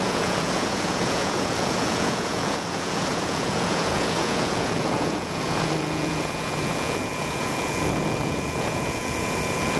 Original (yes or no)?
no